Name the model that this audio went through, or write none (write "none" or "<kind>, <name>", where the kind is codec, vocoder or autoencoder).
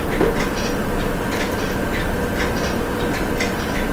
none